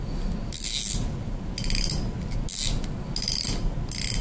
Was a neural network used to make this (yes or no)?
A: no